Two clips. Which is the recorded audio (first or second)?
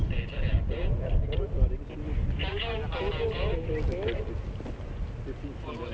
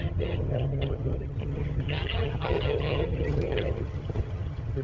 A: first